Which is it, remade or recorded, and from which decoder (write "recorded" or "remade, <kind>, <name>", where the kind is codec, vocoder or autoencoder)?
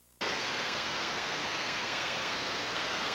remade, codec, SNAC